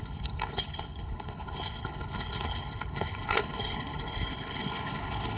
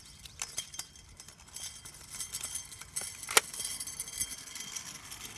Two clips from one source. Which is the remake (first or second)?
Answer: first